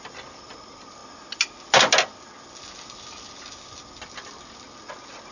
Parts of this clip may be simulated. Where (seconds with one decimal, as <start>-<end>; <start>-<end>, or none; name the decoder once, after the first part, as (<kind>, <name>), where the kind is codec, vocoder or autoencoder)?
none